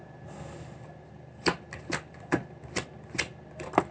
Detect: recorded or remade recorded